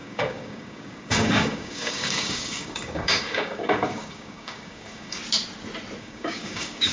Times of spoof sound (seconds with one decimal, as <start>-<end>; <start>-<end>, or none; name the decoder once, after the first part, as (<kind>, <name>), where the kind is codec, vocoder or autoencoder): 0.0-5.2 (codec, DAC); 6.0-6.9